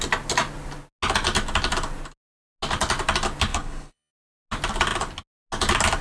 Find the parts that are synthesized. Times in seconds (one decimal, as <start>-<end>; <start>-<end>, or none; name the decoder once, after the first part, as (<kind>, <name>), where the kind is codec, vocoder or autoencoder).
3.5-4.1 (codec, HILCodec)